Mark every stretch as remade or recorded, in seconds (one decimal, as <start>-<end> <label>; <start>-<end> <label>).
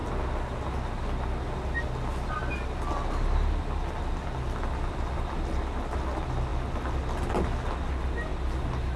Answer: 0.0-9.0 recorded